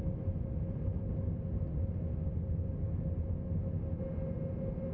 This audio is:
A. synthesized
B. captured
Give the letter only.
B